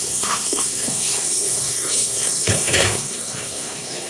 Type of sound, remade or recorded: remade